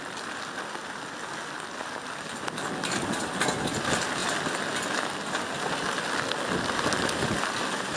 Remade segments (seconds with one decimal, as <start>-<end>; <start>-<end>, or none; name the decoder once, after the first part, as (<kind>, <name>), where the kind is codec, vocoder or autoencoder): none